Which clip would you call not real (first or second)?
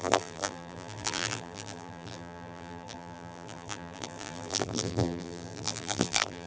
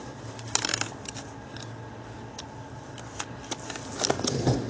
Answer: first